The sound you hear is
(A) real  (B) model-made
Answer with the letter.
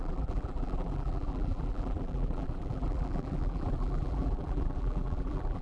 B